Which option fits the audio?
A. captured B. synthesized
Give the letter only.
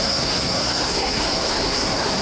B